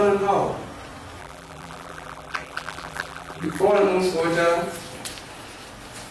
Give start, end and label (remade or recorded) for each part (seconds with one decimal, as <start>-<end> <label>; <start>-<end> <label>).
0.0-1.2 recorded; 1.2-3.6 remade; 3.6-6.1 recorded